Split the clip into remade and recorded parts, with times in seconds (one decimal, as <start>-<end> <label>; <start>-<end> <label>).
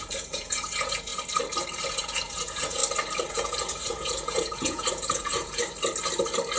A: 0.0-1.1 remade; 1.1-1.9 recorded; 1.9-2.8 remade; 2.8-3.3 recorded; 3.3-5.6 remade; 5.6-6.6 recorded